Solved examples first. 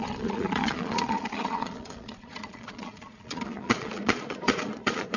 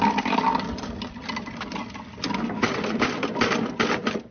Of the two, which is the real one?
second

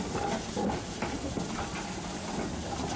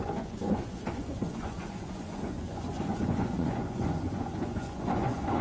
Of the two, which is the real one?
first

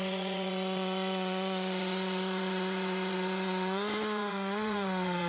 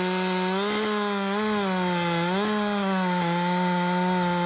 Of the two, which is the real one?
second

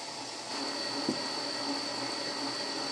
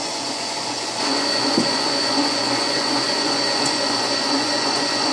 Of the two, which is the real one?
first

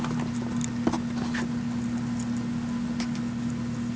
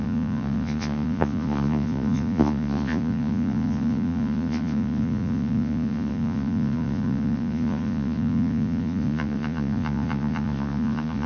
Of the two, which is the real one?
first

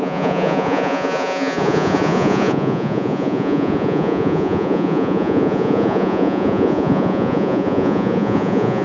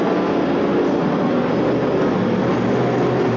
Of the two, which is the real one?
second